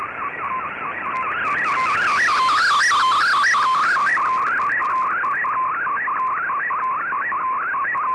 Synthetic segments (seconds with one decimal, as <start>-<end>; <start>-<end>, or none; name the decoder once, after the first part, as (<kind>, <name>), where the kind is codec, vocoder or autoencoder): none